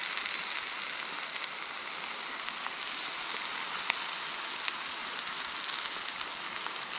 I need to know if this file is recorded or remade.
recorded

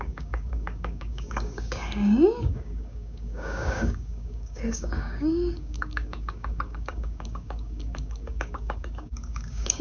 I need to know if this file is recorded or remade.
remade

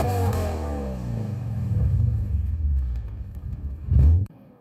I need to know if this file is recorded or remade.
remade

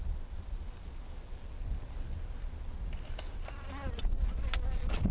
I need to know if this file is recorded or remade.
recorded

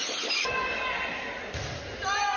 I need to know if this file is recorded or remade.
recorded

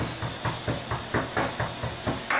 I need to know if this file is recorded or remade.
recorded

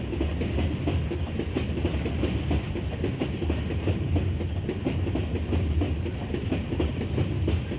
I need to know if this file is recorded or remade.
recorded